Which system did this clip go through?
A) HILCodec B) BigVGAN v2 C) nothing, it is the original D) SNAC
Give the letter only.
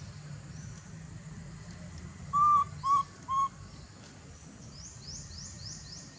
C